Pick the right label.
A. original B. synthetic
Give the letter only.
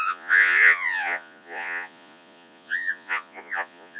B